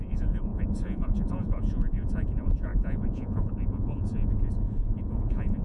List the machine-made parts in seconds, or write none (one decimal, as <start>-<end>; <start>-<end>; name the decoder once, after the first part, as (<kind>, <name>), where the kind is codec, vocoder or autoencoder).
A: 0.0-5.6 (vocoder, Vocos)